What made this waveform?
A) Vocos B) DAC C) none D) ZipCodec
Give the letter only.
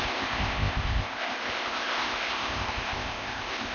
D